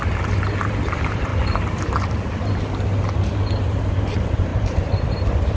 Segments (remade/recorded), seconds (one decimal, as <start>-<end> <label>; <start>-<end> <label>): 0.0-0.6 recorded; 0.6-1.3 remade; 1.3-3.9 recorded; 3.9-5.6 remade